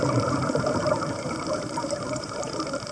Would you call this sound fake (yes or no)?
yes